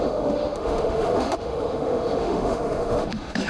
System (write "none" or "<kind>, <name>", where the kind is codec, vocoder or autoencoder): autoencoder, DAC-VAE